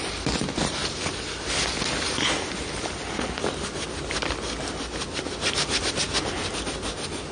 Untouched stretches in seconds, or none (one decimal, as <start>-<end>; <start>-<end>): 0.0-7.3